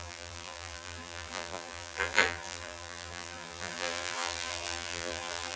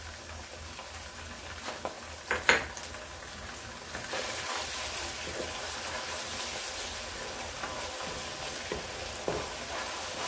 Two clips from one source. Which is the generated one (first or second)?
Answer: first